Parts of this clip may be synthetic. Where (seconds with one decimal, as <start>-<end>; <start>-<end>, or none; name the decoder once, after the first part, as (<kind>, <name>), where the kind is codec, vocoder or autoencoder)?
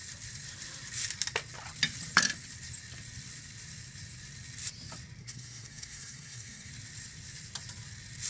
5.2-6.7 (codec, SNAC)